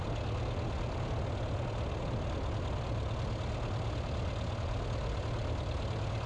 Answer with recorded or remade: recorded